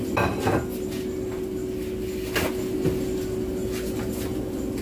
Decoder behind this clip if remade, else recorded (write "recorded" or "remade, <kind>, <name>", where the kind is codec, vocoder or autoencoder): recorded